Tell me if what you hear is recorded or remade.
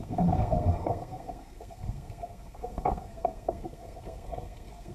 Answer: remade